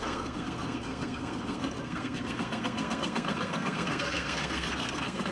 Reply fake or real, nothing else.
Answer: fake